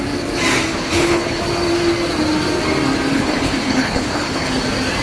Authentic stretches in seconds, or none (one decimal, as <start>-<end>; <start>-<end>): 0.0-0.7; 1.4-3.1; 4.5-5.0